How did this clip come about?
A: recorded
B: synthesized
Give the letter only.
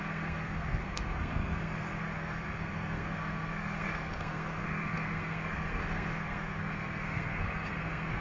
B